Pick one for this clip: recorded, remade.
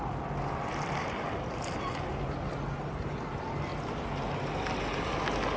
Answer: recorded